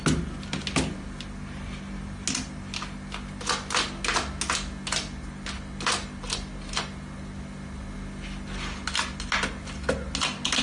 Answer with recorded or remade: recorded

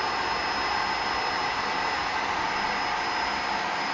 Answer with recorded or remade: recorded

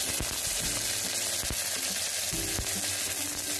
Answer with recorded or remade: recorded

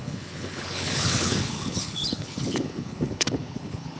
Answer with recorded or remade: remade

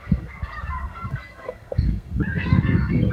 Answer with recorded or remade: remade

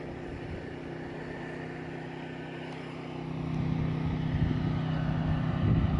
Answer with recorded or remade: recorded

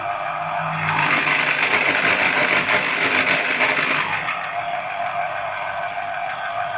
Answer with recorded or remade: recorded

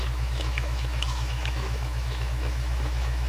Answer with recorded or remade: remade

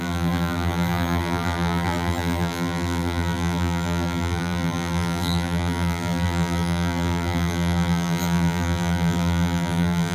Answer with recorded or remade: remade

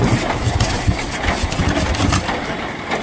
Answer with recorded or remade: recorded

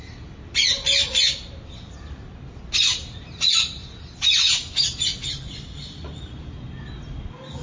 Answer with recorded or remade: recorded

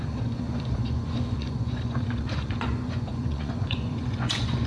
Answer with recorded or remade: remade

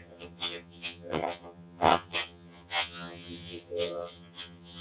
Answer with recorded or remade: remade